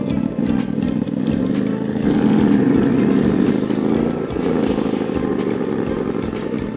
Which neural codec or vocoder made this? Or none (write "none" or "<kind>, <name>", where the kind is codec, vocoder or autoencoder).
none